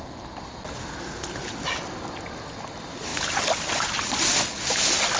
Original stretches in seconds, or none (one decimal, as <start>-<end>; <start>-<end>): 0.0-5.2